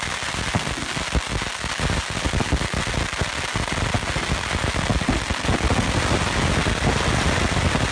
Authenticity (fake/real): real